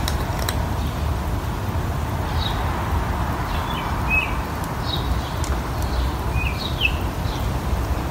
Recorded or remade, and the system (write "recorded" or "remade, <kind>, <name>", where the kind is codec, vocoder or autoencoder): recorded